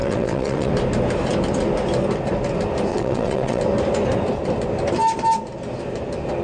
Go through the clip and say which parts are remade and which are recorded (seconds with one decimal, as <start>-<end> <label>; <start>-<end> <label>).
0.0-0.7 remade; 0.7-2.9 recorded; 2.9-3.6 remade; 3.6-6.4 recorded

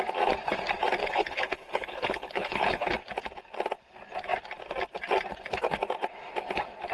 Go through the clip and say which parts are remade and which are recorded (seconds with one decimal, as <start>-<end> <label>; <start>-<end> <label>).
0.0-1.0 recorded; 1.0-2.9 remade; 2.9-6.9 recorded

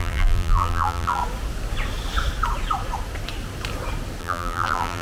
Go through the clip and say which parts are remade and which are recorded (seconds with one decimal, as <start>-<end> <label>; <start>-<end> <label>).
0.0-1.2 remade; 1.2-4.2 recorded; 4.2-5.0 remade

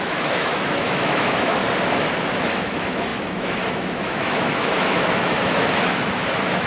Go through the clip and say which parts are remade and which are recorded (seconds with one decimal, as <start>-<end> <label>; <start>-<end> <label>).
0.0-1.6 remade; 1.6-2.6 recorded; 2.6-6.7 remade

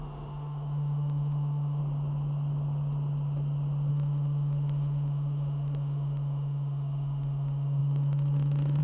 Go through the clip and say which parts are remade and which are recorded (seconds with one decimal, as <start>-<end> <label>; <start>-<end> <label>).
0.0-1.8 remade; 1.8-3.9 recorded; 3.9-8.8 remade

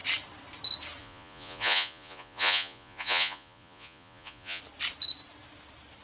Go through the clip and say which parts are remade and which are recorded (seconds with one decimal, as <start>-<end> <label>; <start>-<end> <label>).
0.0-1.0 recorded; 1.0-4.6 remade; 4.6-6.0 recorded

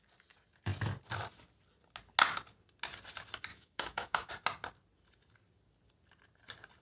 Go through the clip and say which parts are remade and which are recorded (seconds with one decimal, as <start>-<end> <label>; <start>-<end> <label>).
0.0-3.5 recorded; 3.5-4.3 remade; 4.3-6.8 recorded